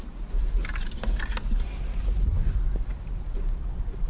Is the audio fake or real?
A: real